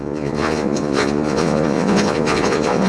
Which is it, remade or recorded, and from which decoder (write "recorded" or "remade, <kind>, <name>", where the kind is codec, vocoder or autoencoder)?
remade, vocoder, Vocos